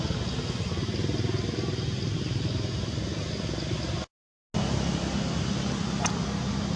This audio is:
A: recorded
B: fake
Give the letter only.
A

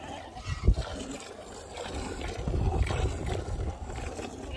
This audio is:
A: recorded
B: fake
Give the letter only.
A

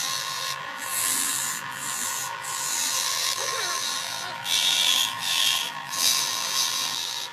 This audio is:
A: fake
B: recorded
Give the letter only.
A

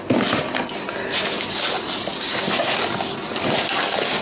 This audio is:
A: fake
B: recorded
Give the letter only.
B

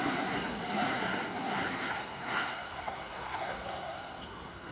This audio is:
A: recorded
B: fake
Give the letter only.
B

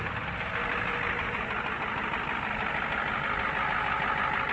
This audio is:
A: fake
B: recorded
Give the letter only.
B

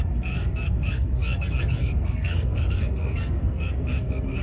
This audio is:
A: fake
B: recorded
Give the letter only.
A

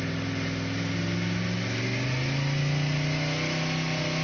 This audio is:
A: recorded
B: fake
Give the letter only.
A